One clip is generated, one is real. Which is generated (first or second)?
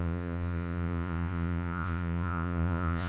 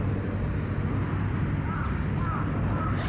first